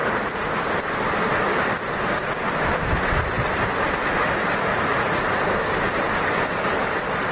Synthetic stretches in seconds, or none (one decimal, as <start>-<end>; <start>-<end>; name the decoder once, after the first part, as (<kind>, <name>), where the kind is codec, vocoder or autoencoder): 0.0-0.6 (vocoder, Vocos); 4.7-5.2

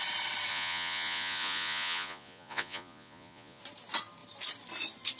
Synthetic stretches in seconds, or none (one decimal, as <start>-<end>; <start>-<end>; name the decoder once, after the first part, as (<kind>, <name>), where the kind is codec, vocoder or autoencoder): 0.5-3.6 (vocoder, Vocos)

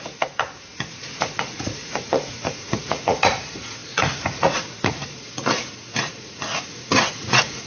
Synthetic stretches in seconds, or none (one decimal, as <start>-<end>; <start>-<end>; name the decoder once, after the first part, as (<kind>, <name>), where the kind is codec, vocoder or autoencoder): 0.0-7.7 (vocoder, Vocos)